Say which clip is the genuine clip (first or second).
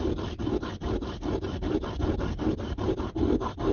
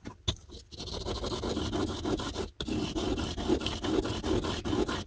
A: second